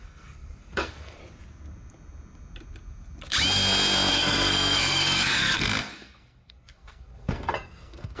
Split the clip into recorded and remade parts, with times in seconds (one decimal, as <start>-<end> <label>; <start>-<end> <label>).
0.0-1.2 remade; 1.2-4.1 recorded; 4.1-8.2 remade